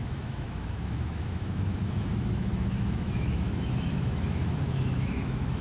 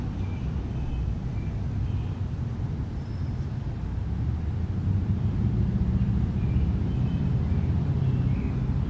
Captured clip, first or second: second